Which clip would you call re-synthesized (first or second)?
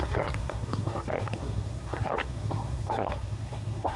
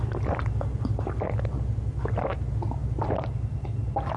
first